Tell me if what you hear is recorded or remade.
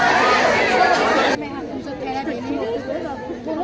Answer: recorded